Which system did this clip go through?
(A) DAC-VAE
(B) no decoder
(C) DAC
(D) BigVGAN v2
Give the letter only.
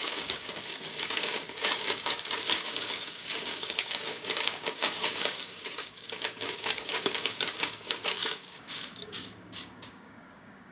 C